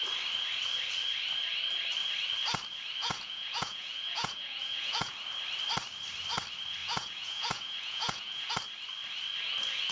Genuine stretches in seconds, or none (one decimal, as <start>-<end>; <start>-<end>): 0.0-3.0; 5.1-6.8; 8.5-9.9